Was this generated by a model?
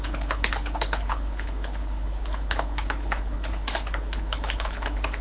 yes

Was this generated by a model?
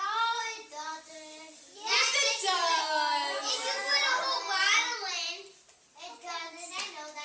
no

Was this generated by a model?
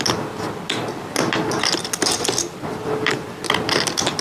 no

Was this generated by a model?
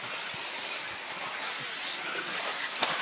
no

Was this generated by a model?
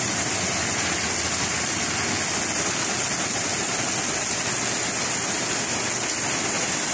no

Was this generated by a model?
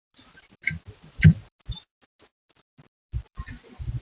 no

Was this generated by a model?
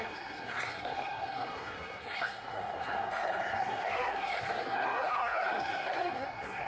yes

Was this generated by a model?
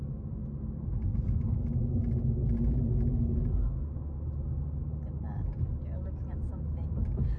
no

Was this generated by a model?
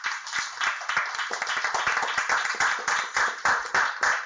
no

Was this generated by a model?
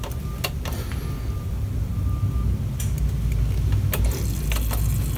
no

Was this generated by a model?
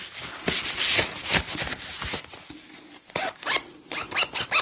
no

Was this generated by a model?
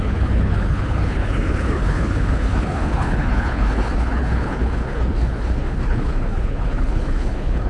yes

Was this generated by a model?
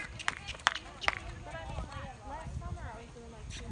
no